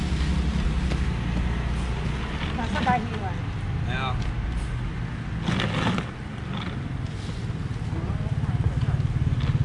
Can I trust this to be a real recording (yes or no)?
yes